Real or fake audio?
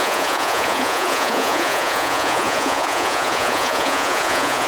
fake